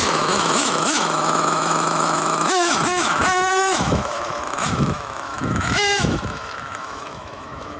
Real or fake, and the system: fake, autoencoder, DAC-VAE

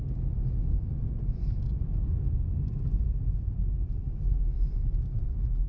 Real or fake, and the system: real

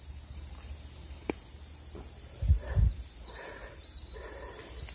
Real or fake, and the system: real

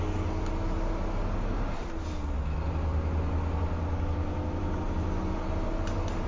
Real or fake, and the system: real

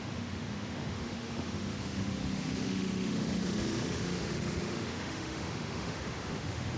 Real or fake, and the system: fake, autoencoder, DAC-VAE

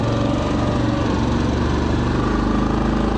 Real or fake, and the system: real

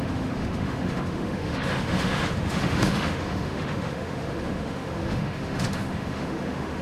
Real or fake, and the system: fake, autoencoder, DAC-VAE